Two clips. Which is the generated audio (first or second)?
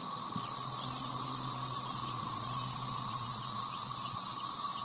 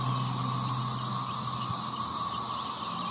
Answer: first